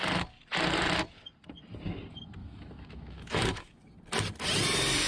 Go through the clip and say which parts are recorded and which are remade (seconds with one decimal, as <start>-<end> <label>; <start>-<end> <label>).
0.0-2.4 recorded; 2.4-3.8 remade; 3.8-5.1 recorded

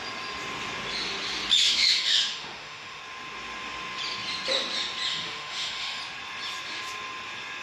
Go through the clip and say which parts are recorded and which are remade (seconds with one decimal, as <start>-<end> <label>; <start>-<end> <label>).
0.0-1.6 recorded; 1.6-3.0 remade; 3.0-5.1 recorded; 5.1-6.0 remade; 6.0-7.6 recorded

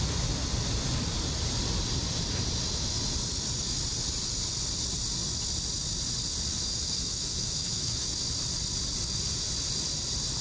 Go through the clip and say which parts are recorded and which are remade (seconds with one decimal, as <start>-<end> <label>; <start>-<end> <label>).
0.0-6.5 recorded; 6.5-8.0 remade; 8.0-10.4 recorded

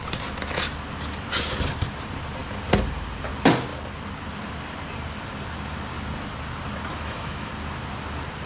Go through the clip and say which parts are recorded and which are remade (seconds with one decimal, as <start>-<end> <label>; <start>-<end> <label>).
0.0-6.9 recorded; 6.9-7.5 remade; 7.5-8.5 recorded